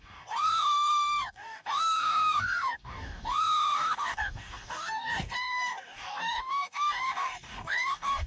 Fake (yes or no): yes